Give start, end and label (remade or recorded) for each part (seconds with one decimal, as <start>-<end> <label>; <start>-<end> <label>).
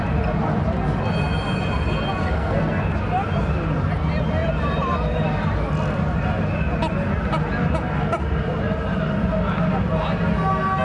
0.0-2.2 recorded; 2.2-2.8 remade; 2.8-10.8 recorded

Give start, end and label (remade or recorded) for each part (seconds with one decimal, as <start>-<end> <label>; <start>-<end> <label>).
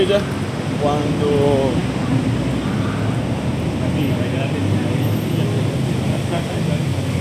0.0-7.2 recorded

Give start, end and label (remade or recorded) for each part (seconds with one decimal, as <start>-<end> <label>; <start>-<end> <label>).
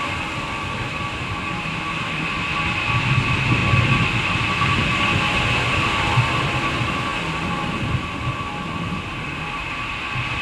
0.0-10.4 recorded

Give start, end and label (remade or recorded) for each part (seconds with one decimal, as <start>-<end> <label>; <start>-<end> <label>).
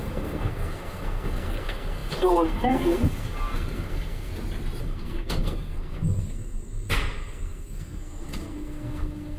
0.0-4.3 remade; 4.3-4.8 recorded; 4.8-9.4 remade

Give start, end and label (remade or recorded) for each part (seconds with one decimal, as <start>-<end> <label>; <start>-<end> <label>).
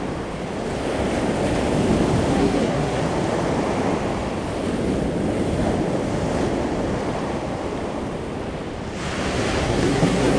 0.0-2.3 recorded; 2.3-3.0 remade; 3.0-9.6 recorded; 9.6-10.4 remade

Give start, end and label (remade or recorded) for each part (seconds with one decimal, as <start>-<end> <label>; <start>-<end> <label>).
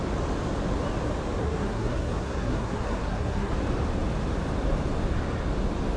0.0-1.4 recorded; 1.4-3.5 remade; 3.5-6.0 recorded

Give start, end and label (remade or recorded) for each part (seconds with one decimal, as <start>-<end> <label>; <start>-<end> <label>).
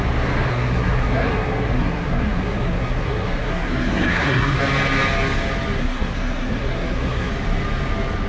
0.0-0.5 recorded; 0.5-4.6 remade; 4.6-5.8 recorded; 5.8-7.3 remade; 7.3-8.3 recorded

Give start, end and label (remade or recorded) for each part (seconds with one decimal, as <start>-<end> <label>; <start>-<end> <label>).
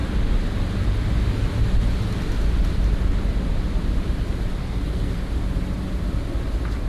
0.0-4.6 recorded; 4.6-5.2 remade; 5.2-6.9 recorded